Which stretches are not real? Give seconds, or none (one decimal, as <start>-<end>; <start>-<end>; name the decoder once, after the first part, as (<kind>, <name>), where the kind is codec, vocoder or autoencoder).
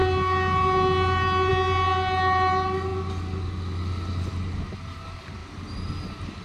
none